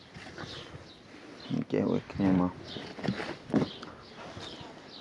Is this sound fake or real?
real